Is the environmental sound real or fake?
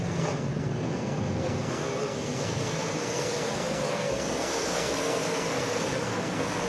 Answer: fake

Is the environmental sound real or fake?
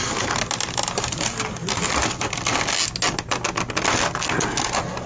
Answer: real